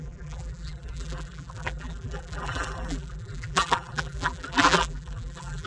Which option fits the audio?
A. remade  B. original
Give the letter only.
A